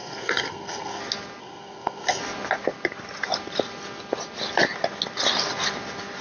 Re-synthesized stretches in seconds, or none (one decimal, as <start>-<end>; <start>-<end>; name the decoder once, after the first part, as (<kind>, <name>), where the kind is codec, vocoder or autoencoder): 0.0-1.0 (codec, SNAC); 1.4-2.2